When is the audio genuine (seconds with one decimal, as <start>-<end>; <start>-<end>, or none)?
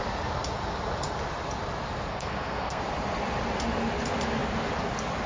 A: 0.0-2.1; 2.8-5.3